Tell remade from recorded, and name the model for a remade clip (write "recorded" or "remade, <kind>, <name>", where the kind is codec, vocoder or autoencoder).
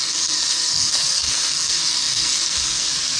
remade, codec, SNAC